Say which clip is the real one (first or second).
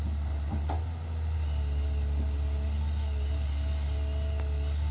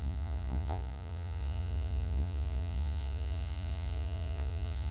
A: first